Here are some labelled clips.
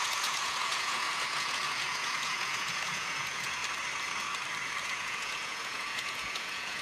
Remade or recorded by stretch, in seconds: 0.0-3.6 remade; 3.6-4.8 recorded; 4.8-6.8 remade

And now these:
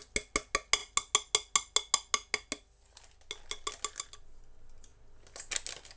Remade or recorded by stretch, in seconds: 0.0-6.0 recorded

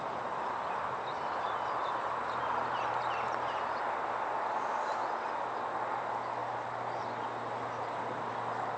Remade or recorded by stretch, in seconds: 0.0-8.8 recorded

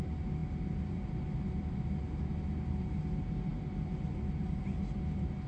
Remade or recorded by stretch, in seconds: 0.0-5.5 recorded

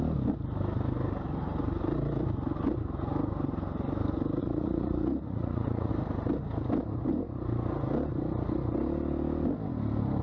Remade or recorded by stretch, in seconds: 0.0-4.4 recorded; 4.4-5.9 remade; 5.9-10.2 recorded